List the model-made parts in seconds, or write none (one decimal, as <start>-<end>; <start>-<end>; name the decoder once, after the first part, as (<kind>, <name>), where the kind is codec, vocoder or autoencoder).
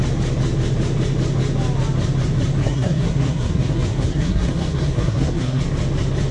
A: 2.6-5.6 (codec, SNAC)